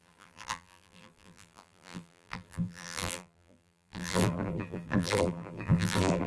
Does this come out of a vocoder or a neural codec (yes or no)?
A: yes